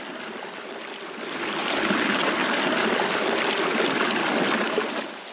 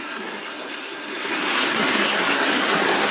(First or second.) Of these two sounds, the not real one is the second